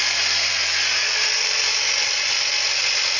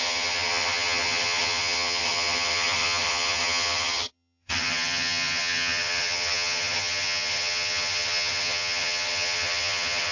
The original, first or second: first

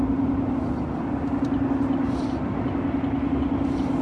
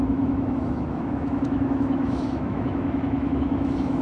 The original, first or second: first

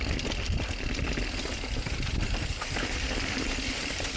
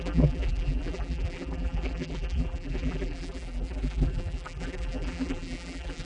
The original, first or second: first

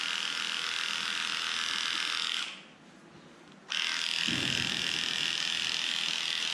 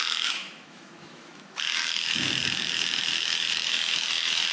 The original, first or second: first